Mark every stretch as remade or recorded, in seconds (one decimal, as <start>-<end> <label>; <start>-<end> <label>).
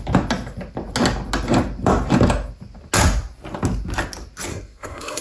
0.0-4.5 recorded; 4.5-5.2 remade